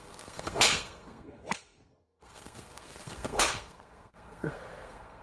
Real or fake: fake